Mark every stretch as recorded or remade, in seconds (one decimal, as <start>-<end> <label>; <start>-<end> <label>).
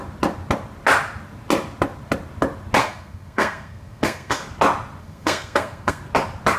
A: 0.0-2.8 recorded; 2.8-4.4 remade; 4.4-5.0 recorded; 5.0-6.0 remade; 6.0-6.6 recorded